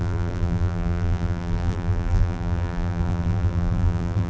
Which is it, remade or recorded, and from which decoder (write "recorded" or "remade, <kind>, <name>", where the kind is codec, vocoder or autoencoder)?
remade, vocoder, BigVGAN v2